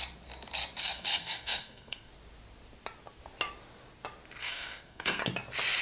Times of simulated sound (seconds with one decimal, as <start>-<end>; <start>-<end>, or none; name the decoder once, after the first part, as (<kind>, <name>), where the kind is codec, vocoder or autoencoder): 0.8-2.1 (codec, SNAC); 4.4-5.2